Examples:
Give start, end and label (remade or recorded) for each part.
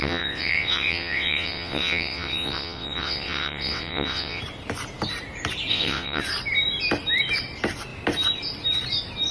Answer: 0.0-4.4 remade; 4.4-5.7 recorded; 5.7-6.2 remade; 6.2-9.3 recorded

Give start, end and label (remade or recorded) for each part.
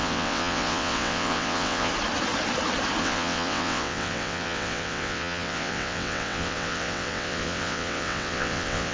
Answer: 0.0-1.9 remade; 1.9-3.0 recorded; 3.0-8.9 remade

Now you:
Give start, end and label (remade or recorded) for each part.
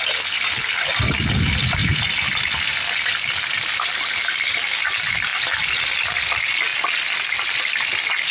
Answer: 0.0-8.3 recorded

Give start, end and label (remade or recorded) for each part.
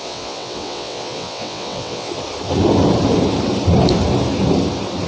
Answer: 0.0-2.1 remade; 2.1-5.1 recorded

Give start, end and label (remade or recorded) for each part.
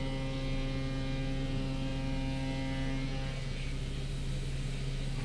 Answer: 0.0-5.2 recorded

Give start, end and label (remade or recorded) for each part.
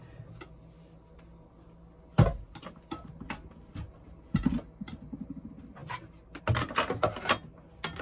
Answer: 0.0-8.0 recorded